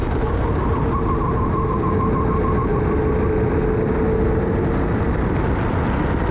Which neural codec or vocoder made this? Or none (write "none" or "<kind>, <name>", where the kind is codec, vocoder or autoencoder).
none